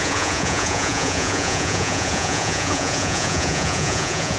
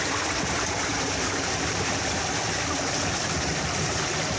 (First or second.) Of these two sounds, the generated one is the first